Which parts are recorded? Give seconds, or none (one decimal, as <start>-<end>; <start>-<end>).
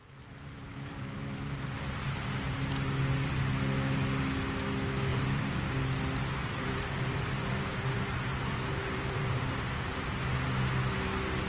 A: 2.7-5.1; 5.7-6.4; 9.6-11.5